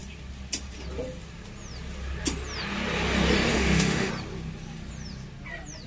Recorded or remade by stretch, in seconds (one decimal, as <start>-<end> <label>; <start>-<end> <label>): 0.0-3.5 recorded; 3.5-4.1 remade; 4.1-5.9 recorded